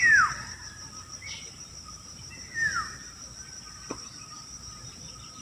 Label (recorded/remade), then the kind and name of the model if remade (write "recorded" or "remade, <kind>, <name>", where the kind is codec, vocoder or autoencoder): remade, vocoder, BigVGAN v2